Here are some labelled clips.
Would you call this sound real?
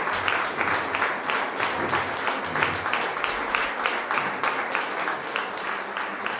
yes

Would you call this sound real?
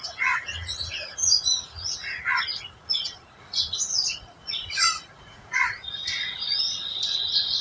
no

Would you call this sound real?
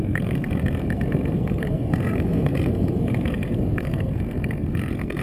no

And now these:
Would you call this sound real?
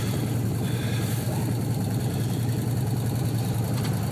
no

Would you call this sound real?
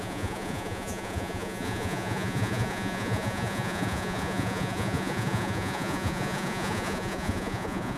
no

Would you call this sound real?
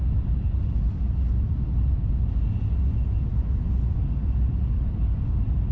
yes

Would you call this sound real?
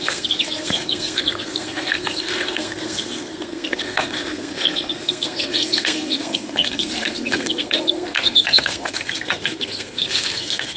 no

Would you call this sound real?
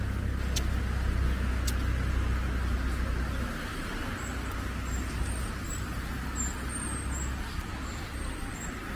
yes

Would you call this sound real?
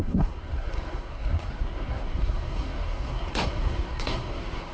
no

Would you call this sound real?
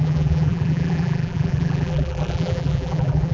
no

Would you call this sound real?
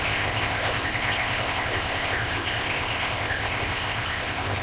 no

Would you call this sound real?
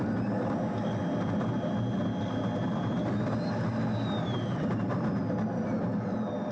yes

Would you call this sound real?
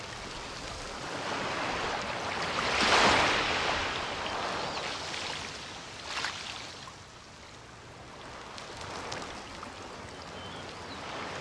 yes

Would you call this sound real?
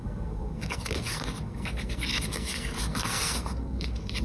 no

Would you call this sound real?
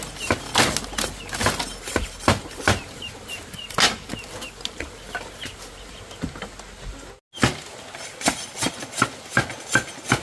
yes